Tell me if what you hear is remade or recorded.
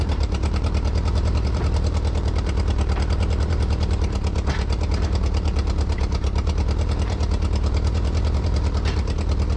remade